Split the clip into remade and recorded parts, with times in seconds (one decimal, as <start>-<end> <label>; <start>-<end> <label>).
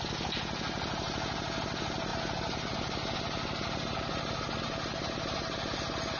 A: 0.0-6.2 recorded